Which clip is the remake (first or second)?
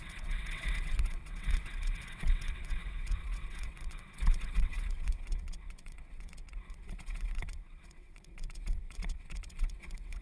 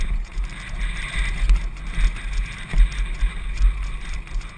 first